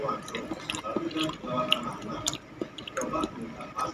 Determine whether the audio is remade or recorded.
recorded